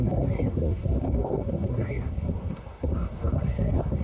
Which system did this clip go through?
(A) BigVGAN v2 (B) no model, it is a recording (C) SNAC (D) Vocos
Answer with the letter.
C